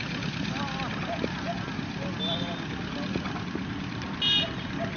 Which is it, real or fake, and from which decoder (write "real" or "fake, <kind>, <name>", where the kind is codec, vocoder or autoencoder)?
real